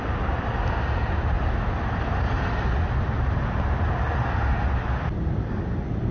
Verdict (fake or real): real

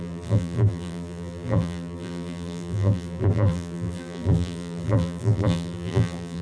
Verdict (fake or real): fake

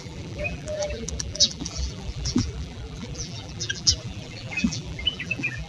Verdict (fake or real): fake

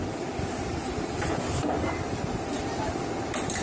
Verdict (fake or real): fake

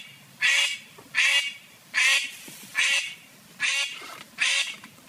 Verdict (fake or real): real